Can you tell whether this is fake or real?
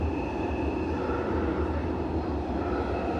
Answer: real